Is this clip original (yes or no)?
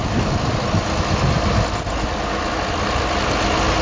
yes